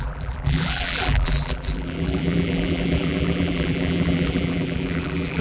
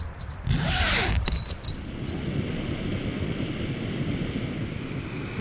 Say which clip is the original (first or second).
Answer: second